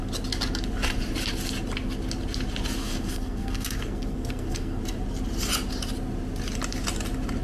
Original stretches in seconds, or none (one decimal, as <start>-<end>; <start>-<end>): 0.0-2.8; 4.8-7.4